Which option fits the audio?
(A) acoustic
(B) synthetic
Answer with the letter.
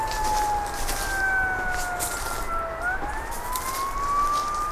A